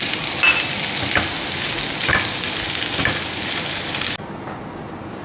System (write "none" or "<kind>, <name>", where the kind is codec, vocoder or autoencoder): none